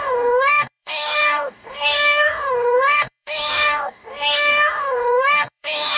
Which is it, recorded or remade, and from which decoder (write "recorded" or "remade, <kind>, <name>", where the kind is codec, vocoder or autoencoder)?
remade, codec, DAC